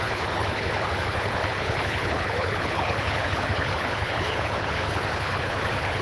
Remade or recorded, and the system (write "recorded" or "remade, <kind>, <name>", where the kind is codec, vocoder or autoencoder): remade, codec, HILCodec